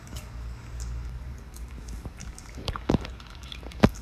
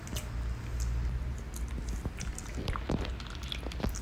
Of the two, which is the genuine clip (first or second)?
second